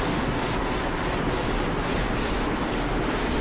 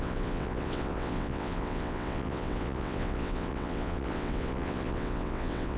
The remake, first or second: second